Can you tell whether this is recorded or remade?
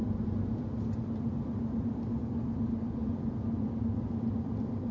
remade